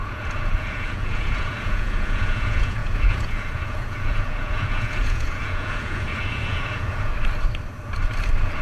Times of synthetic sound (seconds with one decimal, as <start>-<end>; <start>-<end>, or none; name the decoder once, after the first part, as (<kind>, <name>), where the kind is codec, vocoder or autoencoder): 0.0-7.1 (vocoder, Vocos)